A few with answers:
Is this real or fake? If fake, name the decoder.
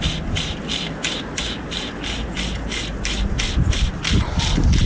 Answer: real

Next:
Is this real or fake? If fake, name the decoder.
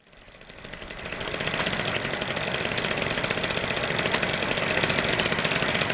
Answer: real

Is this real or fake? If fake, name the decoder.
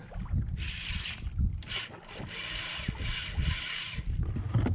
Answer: real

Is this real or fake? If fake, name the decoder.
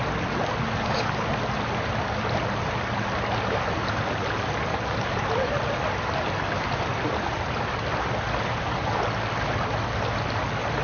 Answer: real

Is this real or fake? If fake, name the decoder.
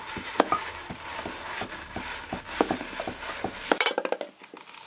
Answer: real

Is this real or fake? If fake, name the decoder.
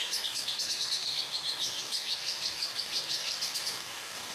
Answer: fake, codec, DAC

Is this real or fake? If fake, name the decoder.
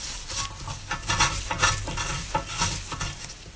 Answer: real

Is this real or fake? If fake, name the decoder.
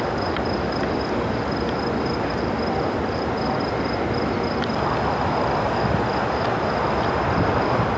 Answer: real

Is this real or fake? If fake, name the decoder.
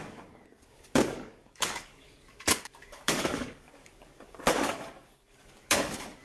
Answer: fake, codec, DAC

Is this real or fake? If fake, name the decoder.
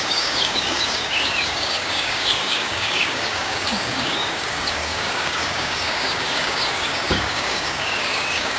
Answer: fake, codec, DAC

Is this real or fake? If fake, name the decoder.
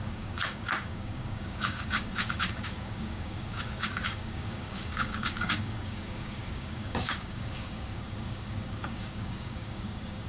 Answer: fake, codec, DAC